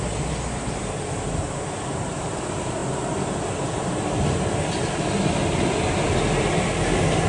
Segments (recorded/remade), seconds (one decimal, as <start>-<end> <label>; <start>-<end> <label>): 0.0-7.3 recorded